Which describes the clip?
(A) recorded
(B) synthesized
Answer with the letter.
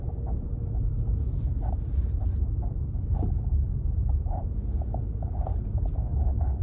B